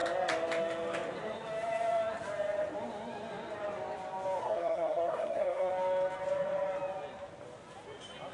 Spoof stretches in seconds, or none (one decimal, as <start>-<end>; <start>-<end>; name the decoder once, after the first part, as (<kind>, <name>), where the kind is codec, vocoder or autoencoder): 4.4-5.7 (codec, SNAC)